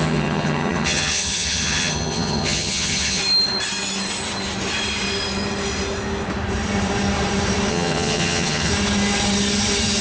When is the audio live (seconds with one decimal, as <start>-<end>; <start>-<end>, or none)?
3.2-7.7; 8.7-10.0